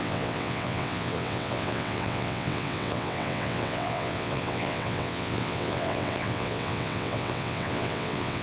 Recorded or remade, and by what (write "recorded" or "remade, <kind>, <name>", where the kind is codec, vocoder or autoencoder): remade, vocoder, WaveNeXt